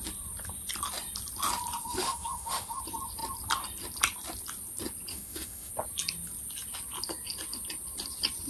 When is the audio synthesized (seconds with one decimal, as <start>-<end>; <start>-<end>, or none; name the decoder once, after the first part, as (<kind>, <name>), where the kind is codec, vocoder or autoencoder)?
1.8-2.8 (autoencoder, DAC-VAE); 5.1-5.7